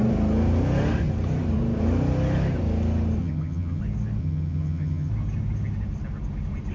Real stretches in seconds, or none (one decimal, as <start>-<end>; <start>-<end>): 0.0-3.2; 3.8-4.2; 5.1-6.7